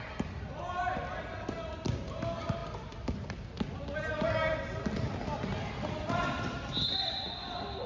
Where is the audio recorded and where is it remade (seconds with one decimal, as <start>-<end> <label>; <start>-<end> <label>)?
0.0-7.9 recorded